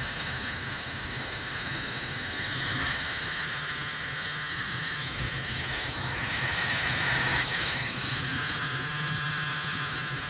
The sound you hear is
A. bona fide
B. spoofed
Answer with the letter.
B